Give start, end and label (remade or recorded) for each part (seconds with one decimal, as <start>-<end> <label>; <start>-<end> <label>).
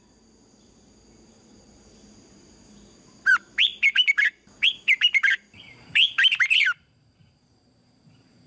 0.0-8.5 remade